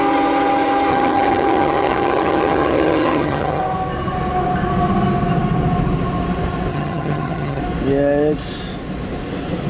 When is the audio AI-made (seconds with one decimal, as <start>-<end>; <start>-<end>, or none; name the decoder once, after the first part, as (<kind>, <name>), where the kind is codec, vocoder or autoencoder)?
0.9-3.6 (vocoder, HiFi-GAN); 6.7-7.6